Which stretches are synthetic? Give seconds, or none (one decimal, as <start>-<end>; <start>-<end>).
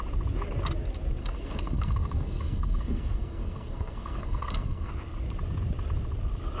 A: 1.2-4.9